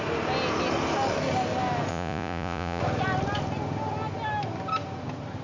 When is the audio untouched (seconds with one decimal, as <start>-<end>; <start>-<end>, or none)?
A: 0.0-1.9; 2.8-5.4